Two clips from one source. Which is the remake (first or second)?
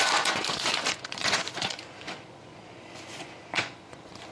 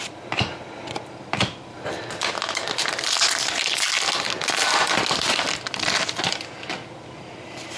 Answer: first